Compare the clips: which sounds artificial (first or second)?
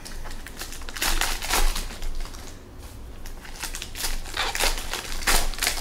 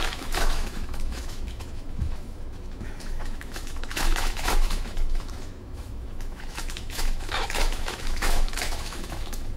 second